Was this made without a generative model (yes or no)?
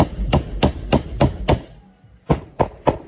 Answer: yes